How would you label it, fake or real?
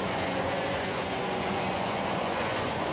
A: fake